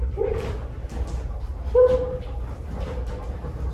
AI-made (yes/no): no